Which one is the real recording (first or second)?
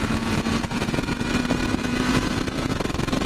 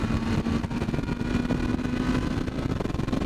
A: second